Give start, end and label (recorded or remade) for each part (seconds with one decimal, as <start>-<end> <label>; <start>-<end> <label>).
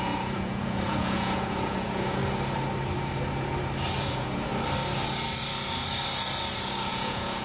0.0-2.2 remade; 2.2-4.1 recorded; 4.1-4.5 remade; 4.5-6.9 recorded; 6.9-7.4 remade